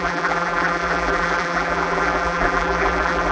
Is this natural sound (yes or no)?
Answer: no